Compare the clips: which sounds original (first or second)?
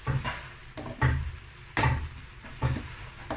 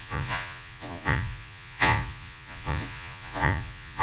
first